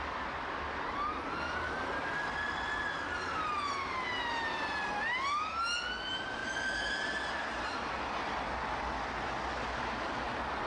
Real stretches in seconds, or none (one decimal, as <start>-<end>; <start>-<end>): 0.0-6.4; 7.3-10.7